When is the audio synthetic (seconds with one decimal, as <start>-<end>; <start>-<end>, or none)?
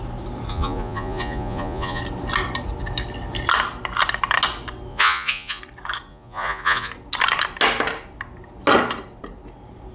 0.5-2.0; 4.9-5.6; 6.1-6.9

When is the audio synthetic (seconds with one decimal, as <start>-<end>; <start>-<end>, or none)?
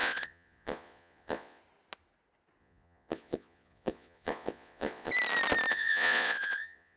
0.0-1.6; 2.6-5.1; 5.7-7.0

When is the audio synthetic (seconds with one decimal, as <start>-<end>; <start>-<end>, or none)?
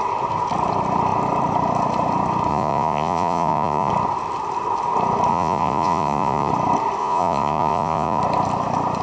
2.5-3.9; 5.3-6.5; 7.0-8.2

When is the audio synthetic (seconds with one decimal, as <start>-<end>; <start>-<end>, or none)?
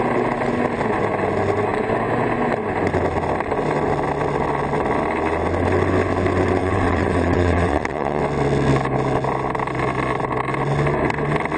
6.6-8.2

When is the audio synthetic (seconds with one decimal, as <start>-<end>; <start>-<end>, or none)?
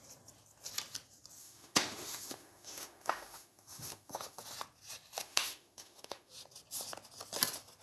1.4-4.4; 5.2-6.3